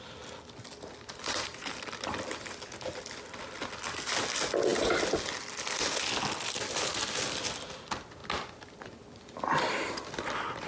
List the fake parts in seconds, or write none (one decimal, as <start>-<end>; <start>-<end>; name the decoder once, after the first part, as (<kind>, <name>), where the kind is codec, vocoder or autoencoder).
none